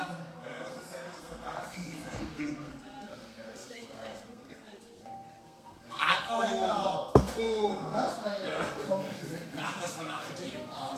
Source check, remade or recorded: remade